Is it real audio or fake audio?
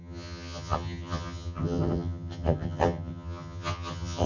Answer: fake